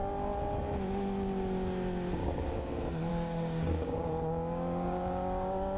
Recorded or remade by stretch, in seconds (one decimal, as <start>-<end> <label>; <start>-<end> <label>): 0.0-2.2 recorded; 2.2-2.7 remade; 2.7-3.1 recorded; 3.1-5.8 remade